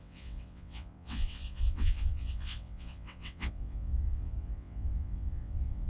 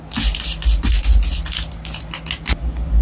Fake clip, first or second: first